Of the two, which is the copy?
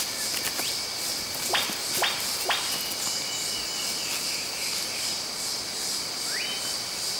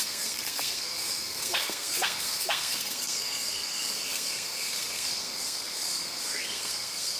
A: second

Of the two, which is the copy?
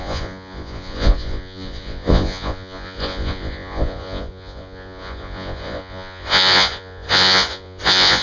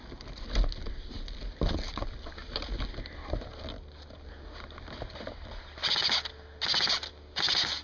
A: first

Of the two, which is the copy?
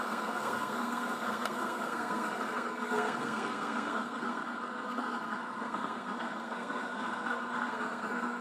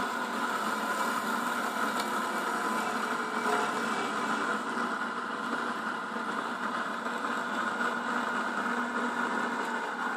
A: first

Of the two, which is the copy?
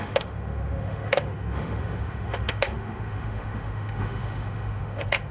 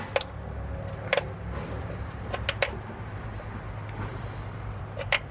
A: first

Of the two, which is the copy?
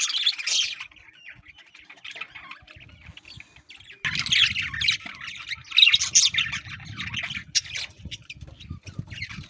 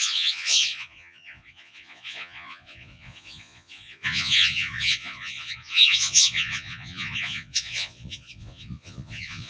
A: second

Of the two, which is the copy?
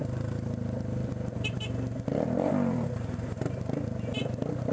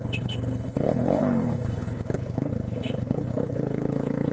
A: second